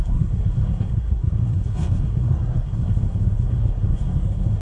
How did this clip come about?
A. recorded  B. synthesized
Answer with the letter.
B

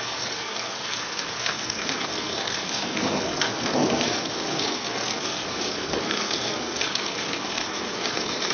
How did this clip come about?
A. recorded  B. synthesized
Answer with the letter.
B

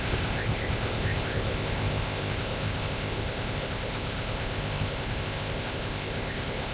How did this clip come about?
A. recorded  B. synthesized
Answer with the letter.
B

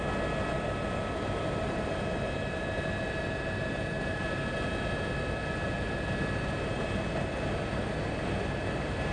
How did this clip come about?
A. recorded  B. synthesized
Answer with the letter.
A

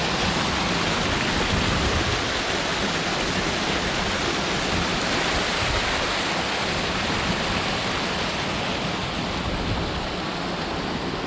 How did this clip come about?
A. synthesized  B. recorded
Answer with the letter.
B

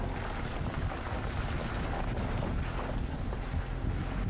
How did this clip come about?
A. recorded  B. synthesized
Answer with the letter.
A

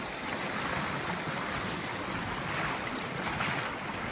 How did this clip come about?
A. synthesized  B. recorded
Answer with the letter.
B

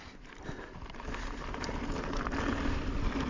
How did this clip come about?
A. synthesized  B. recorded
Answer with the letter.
B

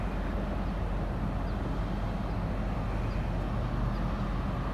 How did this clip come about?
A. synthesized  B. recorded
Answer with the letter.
B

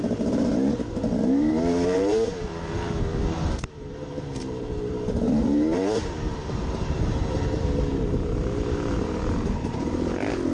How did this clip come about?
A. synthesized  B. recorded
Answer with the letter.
A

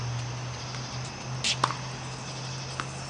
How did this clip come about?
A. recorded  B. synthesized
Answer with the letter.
A